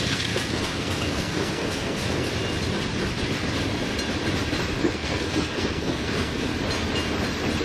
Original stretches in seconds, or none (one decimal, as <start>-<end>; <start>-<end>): 2.3-4.8; 6.5-7.6

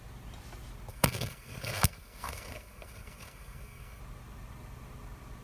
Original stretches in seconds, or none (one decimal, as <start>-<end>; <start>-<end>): 0.0-0.9; 4.0-5.4

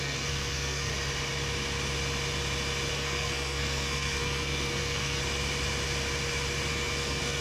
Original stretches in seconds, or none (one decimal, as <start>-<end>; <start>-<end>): 0.9-2.9; 5.2-6.7

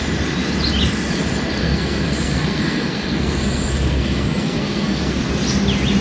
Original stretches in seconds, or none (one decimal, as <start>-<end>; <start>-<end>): 0.0-1.6; 5.2-6.0